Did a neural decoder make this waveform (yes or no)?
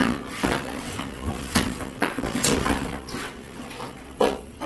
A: yes